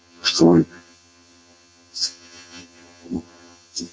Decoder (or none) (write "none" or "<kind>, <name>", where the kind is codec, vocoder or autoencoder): vocoder, HiFi-GAN